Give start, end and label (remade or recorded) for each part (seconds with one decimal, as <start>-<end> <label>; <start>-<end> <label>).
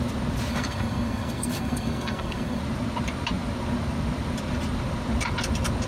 0.0-0.5 recorded; 0.5-2.6 remade; 2.6-5.9 recorded